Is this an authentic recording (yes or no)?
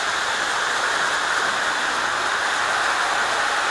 yes